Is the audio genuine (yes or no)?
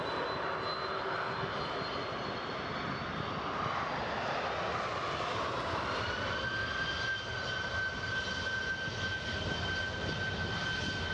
yes